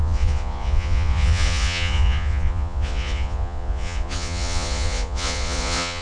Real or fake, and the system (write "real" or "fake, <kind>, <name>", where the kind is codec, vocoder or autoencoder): fake, vocoder, Vocos